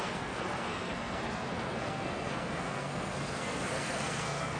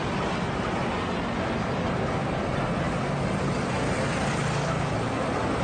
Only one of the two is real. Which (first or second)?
second